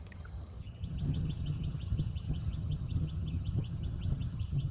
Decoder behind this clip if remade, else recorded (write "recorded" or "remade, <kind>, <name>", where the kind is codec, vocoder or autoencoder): remade, vocoder, HiFi-GAN